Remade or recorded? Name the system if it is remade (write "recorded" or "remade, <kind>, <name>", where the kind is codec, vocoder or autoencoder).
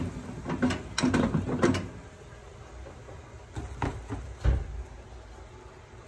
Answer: recorded